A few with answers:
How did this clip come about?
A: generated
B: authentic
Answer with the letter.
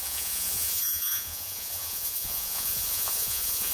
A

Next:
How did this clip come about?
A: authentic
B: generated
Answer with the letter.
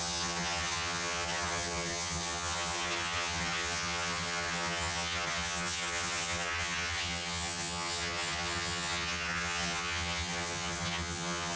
B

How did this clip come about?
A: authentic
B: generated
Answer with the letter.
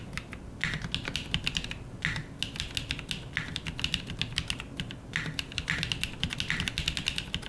A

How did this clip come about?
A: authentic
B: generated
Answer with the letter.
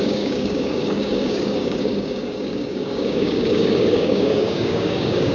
B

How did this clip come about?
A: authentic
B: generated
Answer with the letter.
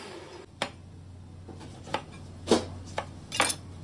A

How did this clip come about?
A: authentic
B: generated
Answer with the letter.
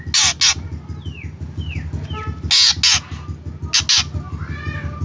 A